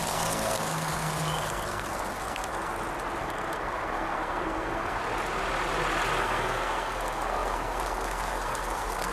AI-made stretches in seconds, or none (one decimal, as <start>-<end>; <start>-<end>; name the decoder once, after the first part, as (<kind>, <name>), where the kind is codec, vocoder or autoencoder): 0.0-2.7 (codec, SNAC); 3.2-5.0; 6.2-9.1